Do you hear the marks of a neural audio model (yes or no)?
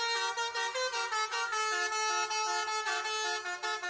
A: no